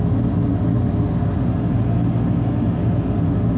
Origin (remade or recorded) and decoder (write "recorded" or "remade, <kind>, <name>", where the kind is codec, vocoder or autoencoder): recorded